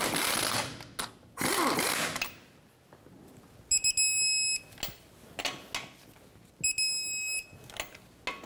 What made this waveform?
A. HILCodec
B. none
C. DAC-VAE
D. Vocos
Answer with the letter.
B